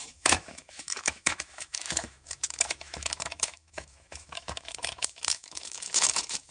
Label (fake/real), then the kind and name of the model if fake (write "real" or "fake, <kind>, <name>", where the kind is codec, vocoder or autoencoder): fake, autoencoder, DAC-VAE